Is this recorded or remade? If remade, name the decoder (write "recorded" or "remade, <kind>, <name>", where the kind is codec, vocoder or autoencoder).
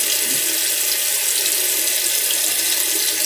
recorded